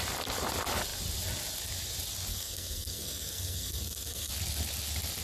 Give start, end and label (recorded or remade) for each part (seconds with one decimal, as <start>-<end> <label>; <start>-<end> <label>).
0.0-2.3 recorded; 2.3-4.3 remade; 4.3-5.2 recorded